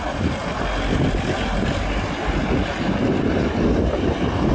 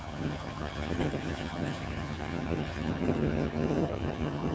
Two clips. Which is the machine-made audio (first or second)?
second